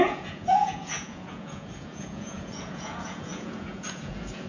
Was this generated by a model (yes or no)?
yes